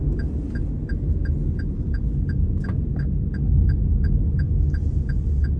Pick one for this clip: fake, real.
real